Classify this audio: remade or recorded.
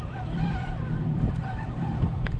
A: remade